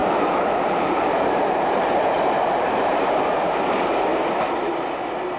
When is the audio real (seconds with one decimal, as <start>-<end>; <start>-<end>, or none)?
4.1-5.4